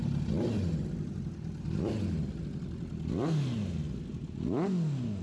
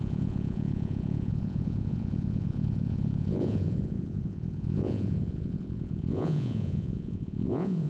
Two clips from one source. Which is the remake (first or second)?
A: second